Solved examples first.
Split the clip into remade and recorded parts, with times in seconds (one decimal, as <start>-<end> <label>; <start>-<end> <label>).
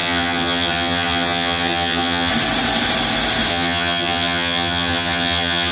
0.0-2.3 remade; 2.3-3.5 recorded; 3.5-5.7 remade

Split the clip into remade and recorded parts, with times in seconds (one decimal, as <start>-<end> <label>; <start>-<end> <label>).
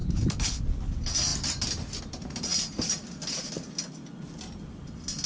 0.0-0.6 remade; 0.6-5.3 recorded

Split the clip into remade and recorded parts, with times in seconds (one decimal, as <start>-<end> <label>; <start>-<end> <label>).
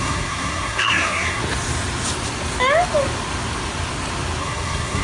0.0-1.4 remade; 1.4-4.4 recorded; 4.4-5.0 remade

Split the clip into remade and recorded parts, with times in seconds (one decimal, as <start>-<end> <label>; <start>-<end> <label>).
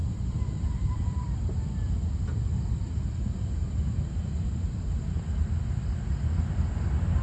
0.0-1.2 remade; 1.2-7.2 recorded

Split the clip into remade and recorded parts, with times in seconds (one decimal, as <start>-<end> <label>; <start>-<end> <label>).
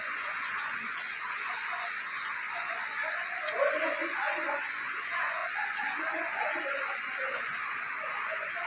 0.0-8.7 remade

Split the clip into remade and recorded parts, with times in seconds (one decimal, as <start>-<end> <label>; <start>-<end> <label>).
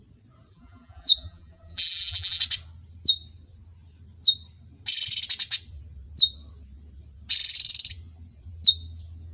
0.0-0.5 recorded; 0.5-2.4 remade; 2.4-9.3 recorded